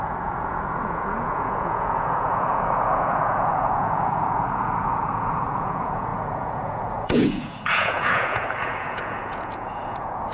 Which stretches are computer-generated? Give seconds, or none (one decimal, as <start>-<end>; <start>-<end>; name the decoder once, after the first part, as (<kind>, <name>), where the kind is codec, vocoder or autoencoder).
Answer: 0.0-10.3 (vocoder, Vocos)